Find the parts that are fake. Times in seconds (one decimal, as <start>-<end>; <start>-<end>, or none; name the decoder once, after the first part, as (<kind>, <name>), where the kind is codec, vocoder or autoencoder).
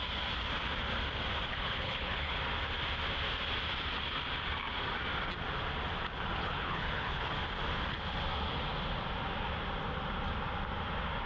1.5-2.4 (codec, HILCodec); 6.4-7.3